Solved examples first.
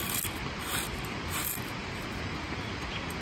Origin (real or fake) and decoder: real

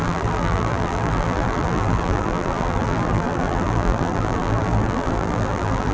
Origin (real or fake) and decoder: fake, vocoder, BigVGAN v2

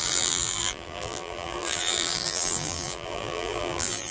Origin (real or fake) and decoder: fake, vocoder, BigVGAN v2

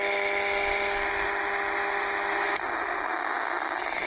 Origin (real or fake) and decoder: real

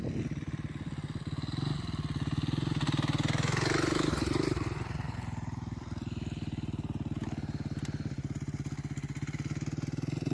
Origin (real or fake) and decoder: real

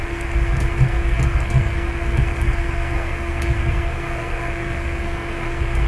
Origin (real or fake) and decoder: fake, codec, SNAC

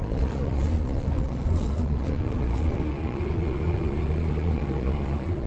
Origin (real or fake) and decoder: fake, vocoder, Vocos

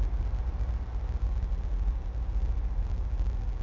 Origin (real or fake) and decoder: real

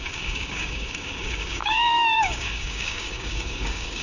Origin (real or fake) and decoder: fake, codec, DAC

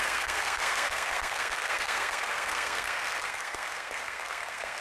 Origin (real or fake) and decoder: fake, codec, SNAC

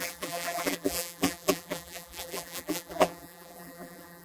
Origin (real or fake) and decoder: fake, vocoder, BigVGAN v2